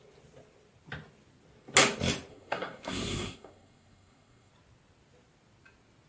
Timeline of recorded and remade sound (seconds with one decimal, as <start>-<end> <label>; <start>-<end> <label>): 0.0-2.3 recorded; 2.3-4.5 remade; 4.5-6.1 recorded